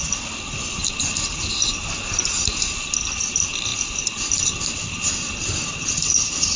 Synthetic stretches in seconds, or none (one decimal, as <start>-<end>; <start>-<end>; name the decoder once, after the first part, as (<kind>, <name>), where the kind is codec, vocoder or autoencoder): none